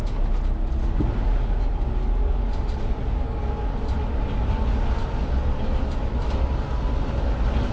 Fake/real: real